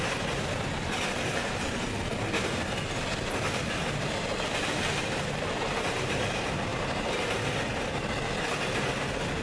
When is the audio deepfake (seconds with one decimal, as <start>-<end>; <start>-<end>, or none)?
none